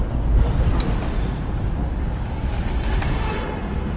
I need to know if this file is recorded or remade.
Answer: recorded